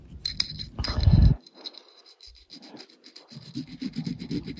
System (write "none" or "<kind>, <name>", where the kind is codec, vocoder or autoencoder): none